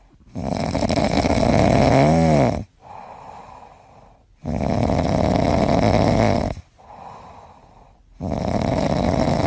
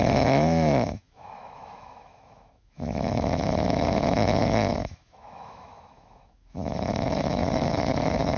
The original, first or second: first